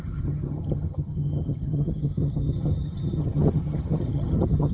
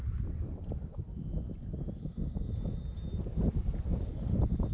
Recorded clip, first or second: second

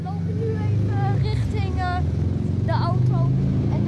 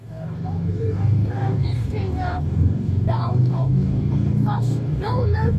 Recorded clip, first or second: first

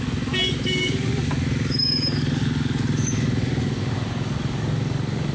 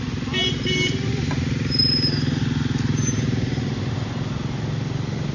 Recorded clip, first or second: second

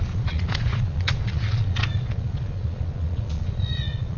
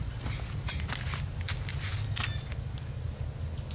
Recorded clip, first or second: second